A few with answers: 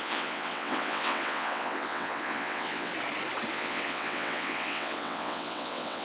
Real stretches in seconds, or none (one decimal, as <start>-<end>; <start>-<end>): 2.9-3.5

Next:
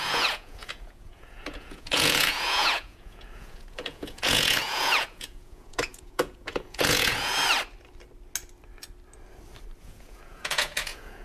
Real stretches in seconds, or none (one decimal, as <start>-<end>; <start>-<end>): 7.3-9.8

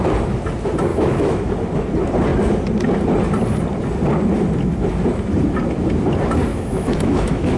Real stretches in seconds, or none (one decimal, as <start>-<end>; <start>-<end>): 0.0-0.9; 1.5-6.5

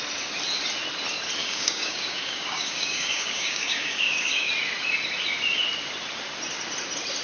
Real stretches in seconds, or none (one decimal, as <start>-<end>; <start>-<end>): 0.0-1.4; 4.5-7.2